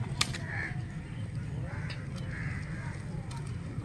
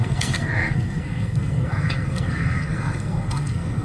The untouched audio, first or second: first